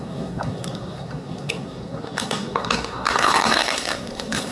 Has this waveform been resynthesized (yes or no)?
yes